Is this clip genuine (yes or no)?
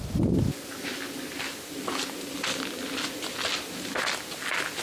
yes